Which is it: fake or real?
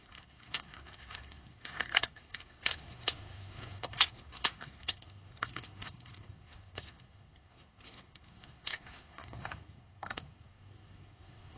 fake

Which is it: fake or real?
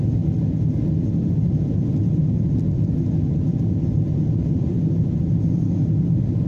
real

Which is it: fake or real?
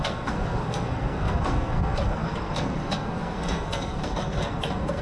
fake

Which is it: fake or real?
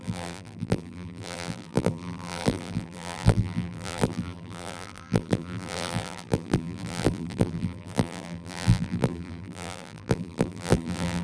fake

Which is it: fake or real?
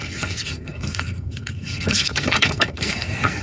fake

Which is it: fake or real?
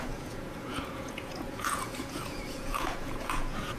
fake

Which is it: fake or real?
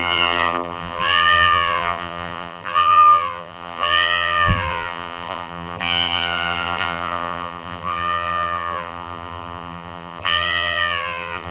fake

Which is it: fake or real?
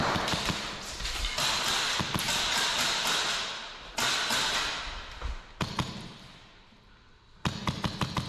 real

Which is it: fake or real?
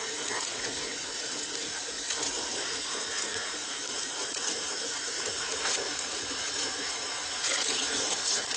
fake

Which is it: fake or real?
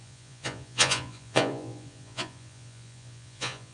fake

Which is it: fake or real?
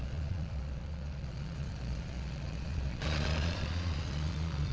fake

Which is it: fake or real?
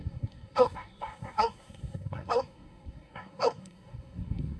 fake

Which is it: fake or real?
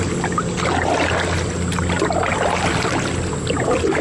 real